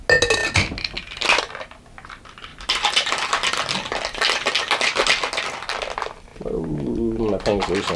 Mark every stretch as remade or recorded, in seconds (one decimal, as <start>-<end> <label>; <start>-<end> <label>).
0.0-8.0 recorded